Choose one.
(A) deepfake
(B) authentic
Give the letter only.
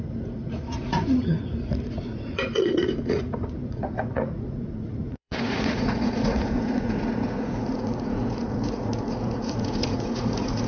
A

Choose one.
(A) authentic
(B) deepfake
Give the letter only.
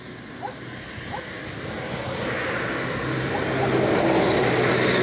A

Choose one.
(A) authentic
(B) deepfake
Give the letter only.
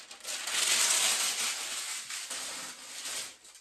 A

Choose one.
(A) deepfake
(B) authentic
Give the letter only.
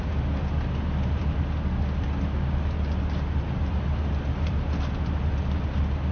B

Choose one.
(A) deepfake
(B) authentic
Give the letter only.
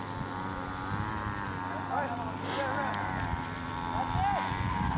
B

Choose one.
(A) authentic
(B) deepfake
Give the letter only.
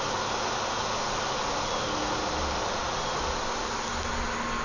A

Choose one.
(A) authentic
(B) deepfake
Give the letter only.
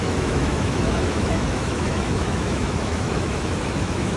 B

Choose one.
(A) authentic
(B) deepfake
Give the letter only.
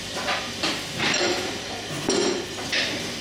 B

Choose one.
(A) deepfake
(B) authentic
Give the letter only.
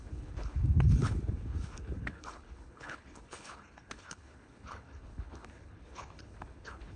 A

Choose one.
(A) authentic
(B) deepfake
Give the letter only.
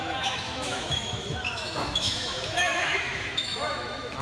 B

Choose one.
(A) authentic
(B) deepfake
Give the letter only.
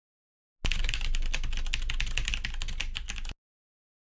A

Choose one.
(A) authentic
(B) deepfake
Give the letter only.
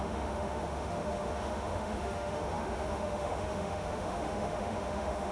B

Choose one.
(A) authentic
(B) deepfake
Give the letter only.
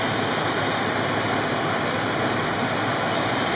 A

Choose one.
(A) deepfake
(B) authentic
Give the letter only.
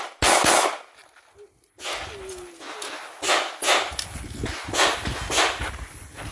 B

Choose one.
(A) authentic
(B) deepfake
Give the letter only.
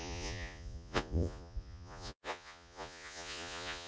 B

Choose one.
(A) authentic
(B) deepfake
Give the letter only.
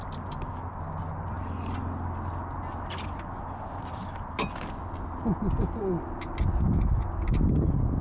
A